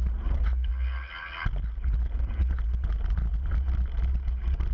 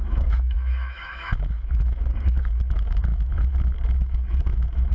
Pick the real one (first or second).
first